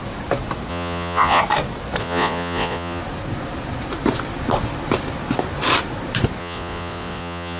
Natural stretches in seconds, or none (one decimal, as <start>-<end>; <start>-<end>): 0.0-0.7; 1.4-2.0; 3.0-6.4